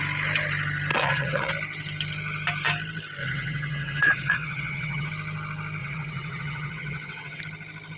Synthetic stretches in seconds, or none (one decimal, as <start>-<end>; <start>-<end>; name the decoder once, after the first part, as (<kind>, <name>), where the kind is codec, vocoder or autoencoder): 0.9-1.5 (vocoder, WaveNeXt); 3.2-5.1; 5.8-7.4